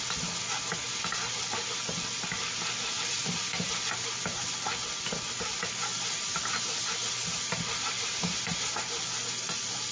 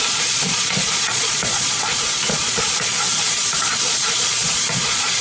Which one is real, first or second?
first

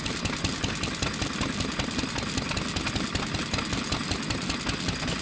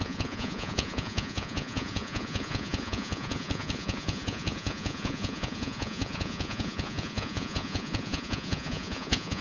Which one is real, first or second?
first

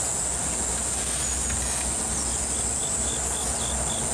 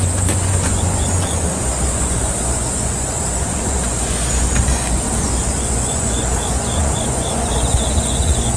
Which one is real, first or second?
first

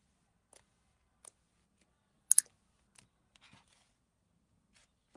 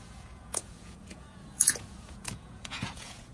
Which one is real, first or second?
first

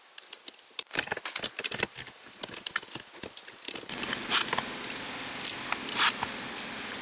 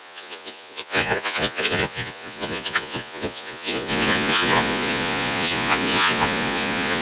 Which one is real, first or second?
first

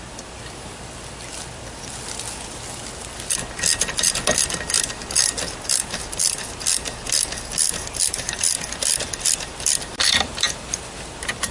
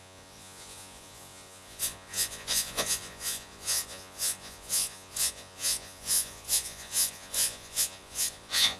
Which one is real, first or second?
first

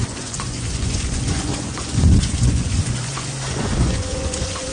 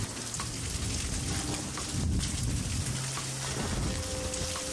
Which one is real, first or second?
second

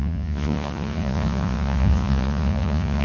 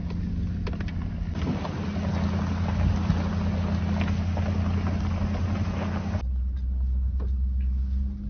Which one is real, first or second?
second